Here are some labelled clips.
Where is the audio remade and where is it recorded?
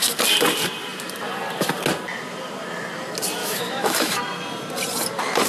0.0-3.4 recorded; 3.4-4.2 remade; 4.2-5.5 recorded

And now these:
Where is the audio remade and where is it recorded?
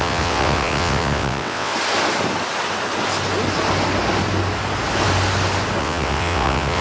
0.0-1.7 remade; 1.7-5.8 recorded; 5.8-6.8 remade